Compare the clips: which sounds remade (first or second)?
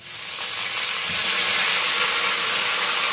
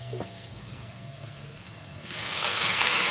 second